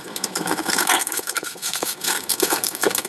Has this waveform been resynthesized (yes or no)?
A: yes